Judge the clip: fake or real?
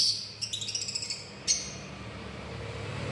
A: real